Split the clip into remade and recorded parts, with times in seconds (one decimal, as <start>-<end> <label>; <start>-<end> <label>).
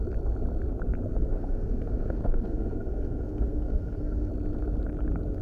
0.0-1.1 recorded; 1.1-4.3 remade; 4.3-5.4 recorded